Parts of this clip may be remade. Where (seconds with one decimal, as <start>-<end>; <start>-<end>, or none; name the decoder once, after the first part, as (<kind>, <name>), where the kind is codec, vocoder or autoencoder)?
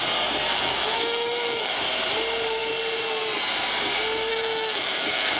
0.5-1.7 (autoencoder, DAC-VAE); 4.3-5.4